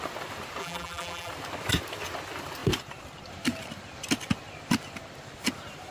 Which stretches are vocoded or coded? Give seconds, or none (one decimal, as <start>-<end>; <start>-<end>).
0.6-1.3